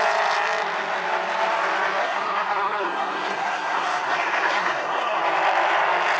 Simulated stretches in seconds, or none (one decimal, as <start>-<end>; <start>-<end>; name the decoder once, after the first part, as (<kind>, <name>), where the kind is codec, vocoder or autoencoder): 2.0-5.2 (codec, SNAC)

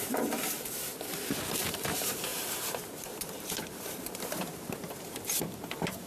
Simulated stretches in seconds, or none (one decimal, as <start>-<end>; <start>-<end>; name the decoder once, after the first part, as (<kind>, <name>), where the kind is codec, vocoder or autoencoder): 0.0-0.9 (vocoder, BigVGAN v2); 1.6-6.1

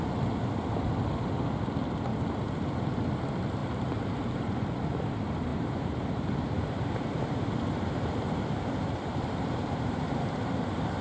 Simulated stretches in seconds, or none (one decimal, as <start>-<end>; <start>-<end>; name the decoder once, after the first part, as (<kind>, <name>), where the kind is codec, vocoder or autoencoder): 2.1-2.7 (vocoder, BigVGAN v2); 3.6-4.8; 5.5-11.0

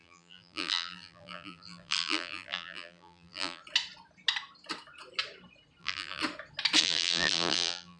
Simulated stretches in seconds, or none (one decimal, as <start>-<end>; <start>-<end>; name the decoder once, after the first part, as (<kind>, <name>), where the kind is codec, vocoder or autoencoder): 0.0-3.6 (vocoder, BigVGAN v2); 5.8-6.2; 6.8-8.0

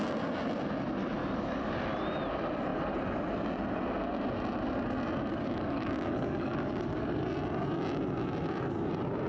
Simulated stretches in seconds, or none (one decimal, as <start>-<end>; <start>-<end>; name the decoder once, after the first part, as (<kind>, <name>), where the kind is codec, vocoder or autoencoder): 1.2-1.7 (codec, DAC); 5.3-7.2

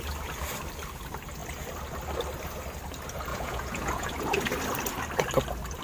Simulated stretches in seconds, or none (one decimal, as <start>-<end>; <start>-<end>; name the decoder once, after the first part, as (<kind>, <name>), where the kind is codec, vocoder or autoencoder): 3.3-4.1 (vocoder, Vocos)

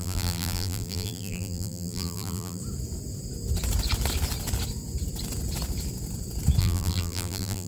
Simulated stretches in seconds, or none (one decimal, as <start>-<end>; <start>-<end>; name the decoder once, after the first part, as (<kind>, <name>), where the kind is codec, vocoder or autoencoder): 0.0-2.6 (vocoder, BigVGAN v2); 6.6-7.7